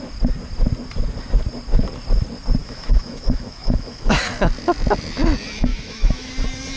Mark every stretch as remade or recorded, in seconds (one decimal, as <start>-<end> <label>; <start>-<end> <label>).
0.0-2.6 recorded; 2.6-4.2 remade; 4.2-5.7 recorded; 5.7-6.3 remade; 6.3-6.8 recorded

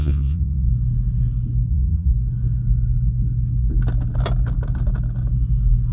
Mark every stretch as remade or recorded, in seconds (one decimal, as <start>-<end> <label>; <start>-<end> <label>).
0.0-0.7 remade; 0.7-1.7 recorded; 1.7-2.1 remade; 2.1-5.9 recorded

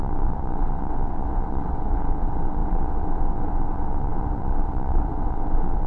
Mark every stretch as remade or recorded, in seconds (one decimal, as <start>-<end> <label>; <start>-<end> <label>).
0.0-5.9 remade

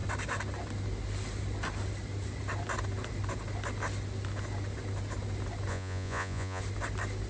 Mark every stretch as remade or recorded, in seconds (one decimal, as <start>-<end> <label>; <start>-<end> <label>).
0.0-5.7 recorded; 5.7-6.6 remade; 6.6-7.3 recorded